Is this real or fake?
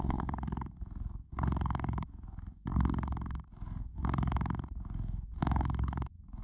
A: fake